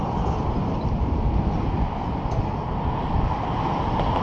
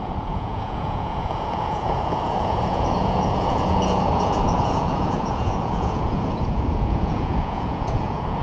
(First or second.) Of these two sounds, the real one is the first